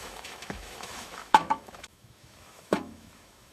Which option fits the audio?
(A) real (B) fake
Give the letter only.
B